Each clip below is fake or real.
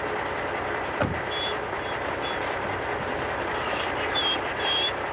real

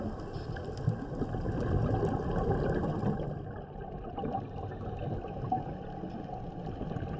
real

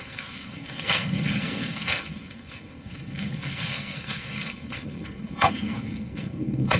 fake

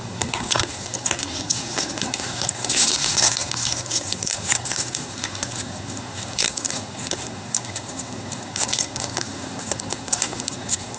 fake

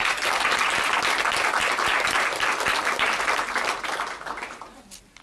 real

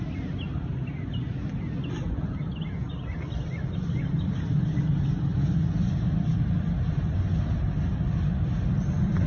real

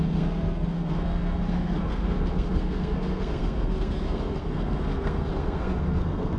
fake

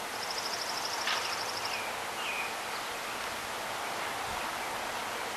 real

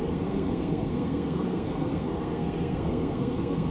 fake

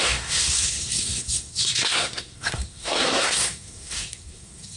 fake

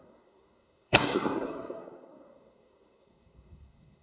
fake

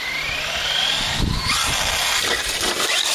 real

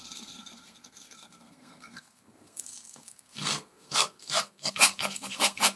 fake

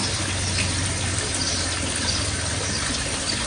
real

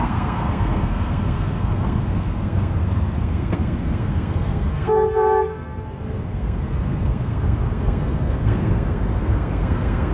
fake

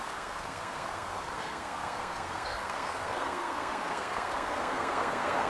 fake